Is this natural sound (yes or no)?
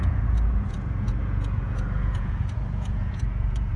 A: no